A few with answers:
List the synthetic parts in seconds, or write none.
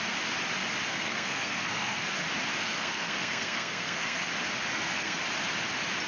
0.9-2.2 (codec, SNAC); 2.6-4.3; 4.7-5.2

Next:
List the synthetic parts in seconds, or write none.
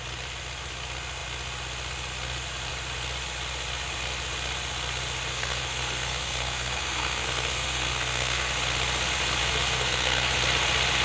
5.3-8.5 (codec, SNAC); 9.4-10.3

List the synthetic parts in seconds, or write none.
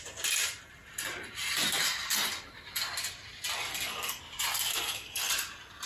3.7-4.2 (codec, SNAC); 4.7-5.3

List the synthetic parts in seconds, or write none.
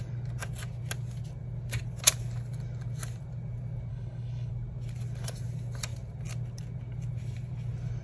3.9-4.5 (codec, HILCodec)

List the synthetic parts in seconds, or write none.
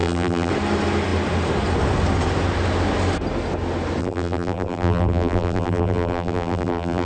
0.0-0.5 (vocoder, BigVGAN v2); 4.0-7.1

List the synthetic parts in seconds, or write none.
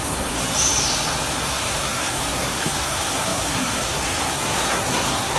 0.0-0.4 (codec, SNAC); 1.3-5.4